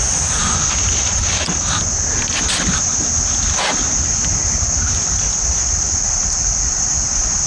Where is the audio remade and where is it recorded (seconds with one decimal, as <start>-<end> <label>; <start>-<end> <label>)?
0.0-7.5 recorded